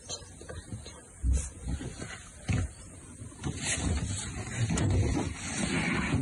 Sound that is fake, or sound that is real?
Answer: real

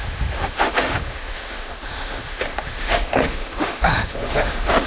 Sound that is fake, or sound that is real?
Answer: fake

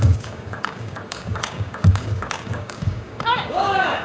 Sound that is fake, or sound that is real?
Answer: fake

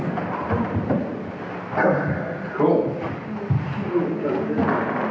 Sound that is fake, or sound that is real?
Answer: real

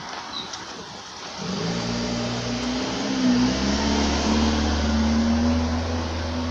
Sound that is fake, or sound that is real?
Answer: real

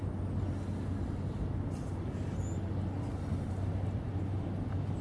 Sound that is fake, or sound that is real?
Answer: real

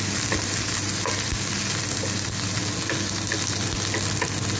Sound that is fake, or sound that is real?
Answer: real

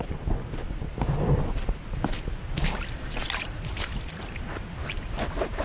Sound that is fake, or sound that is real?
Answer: real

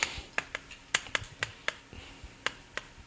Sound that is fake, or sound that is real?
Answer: real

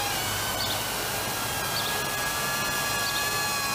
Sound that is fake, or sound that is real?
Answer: real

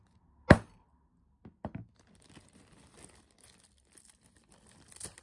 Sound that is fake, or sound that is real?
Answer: real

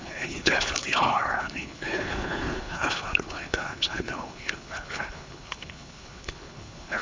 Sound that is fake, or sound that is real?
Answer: fake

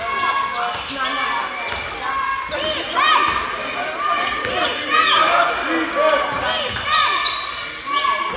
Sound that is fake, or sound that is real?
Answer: real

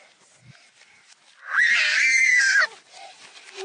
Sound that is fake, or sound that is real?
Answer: real